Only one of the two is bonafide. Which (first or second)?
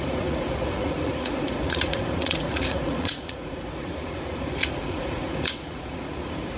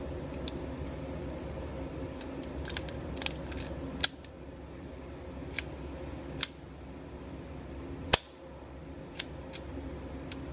second